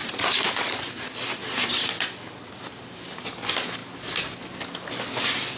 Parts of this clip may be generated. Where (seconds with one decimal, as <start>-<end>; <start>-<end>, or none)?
0.0-0.6; 1.4-1.9